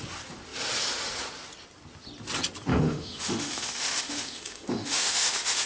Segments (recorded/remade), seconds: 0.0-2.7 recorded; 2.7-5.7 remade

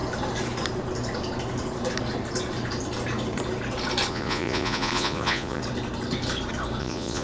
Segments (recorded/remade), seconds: 0.0-4.1 recorded; 4.1-5.6 remade; 5.6-6.8 recorded; 6.8-7.2 remade

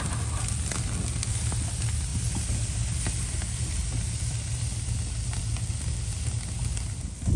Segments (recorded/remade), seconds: 0.0-7.4 recorded